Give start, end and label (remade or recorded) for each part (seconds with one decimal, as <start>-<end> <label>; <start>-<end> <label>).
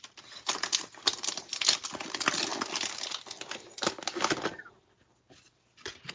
0.0-6.1 recorded